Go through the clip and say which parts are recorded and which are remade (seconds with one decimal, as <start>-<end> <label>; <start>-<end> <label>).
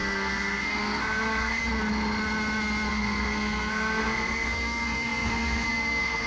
0.0-1.6 remade; 1.6-2.9 recorded; 2.9-6.3 remade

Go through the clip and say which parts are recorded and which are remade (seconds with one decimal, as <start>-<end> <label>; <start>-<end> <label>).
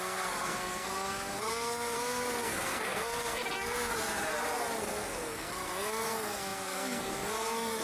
0.0-3.9 remade; 3.9-4.8 recorded; 4.8-7.8 remade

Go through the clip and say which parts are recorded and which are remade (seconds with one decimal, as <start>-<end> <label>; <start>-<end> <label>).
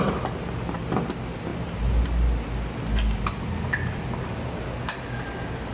0.0-5.7 recorded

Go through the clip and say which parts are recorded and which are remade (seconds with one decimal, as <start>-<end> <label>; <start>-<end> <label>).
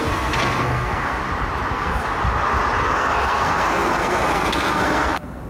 0.0-1.2 remade; 1.2-1.7 recorded; 1.7-2.1 remade; 2.1-2.8 recorded; 2.8-5.5 remade